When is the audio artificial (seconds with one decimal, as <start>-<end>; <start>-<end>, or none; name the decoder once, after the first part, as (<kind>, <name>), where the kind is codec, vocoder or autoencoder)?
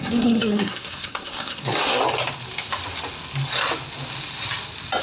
0.0-2.0 (codec, SNAC)